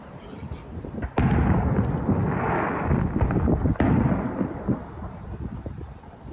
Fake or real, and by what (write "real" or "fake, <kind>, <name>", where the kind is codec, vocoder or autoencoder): real